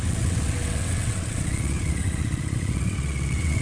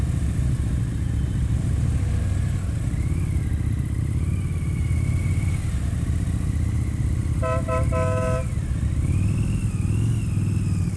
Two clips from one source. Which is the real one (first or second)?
second